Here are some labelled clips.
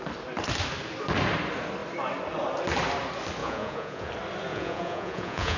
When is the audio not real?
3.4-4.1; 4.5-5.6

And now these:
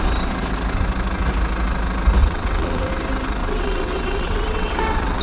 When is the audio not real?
2.2-2.9; 3.4-5.2

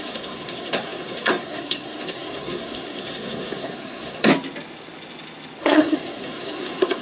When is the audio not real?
0.0-4.3; 5.6-7.0